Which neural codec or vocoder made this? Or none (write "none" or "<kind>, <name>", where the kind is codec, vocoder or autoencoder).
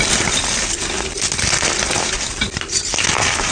none